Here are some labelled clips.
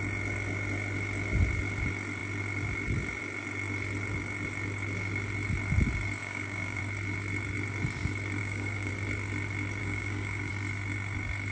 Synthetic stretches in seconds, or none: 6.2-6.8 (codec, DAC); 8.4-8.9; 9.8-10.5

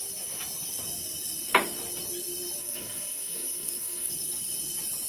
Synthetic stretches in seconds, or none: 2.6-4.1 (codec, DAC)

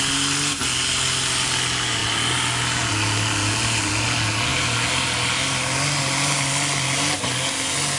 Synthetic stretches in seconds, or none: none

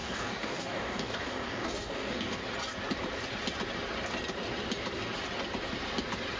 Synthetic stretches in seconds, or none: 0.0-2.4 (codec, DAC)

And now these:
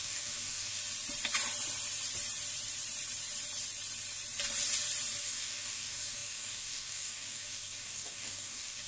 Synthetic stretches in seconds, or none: 0.0-0.8 (codec, DAC); 5.2-8.9

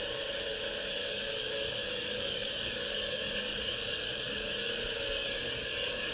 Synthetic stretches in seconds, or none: 1.0-4.7 (codec, DAC); 5.2-6.1

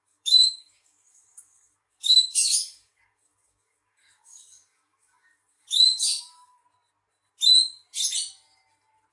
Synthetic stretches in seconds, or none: 0.0-6.6 (codec, DAC)